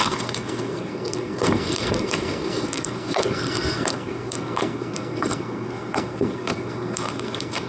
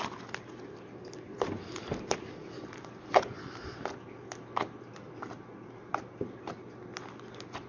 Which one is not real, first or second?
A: first